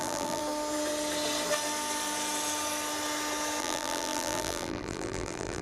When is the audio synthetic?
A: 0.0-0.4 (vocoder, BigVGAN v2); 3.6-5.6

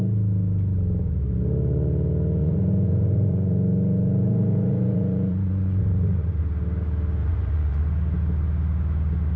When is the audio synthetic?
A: 2.4-6.4 (vocoder, Vocos); 7.2-7.8